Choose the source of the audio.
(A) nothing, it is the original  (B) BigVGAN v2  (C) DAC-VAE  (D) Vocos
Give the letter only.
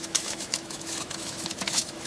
C